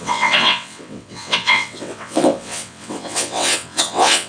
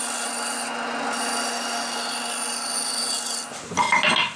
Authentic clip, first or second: second